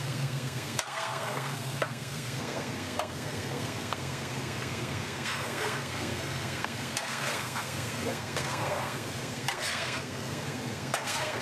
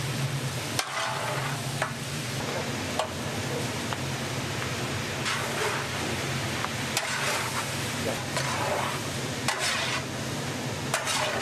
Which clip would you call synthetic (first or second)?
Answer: first